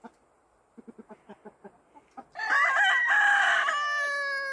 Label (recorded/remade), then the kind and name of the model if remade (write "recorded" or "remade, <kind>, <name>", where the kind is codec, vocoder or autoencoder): recorded